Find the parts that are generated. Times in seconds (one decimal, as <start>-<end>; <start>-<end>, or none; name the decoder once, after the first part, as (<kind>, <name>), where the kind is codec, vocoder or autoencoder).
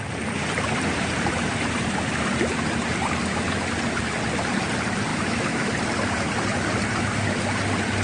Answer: 5.1-5.7 (autoencoder, DAC-VAE)